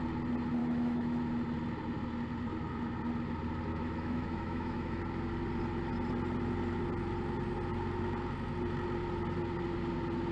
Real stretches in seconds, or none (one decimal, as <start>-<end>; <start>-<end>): 0.0-0.6; 1.2-3.7; 5.0-10.3